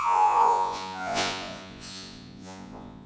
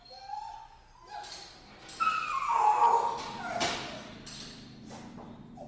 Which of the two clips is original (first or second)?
second